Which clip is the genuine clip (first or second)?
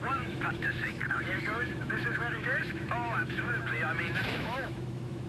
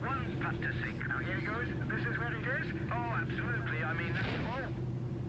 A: second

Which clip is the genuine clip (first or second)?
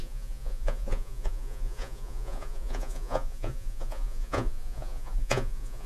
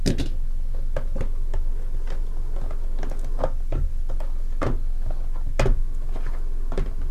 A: second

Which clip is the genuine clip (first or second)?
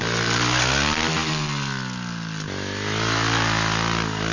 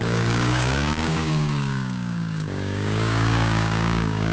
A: first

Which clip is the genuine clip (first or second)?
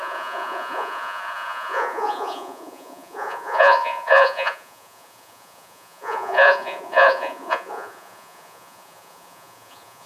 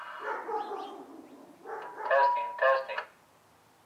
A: second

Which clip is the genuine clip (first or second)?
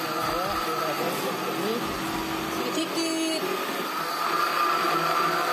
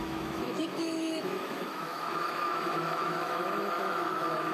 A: first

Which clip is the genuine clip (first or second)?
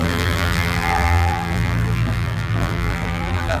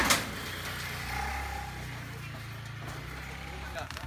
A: second